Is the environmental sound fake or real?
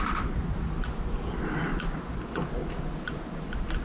real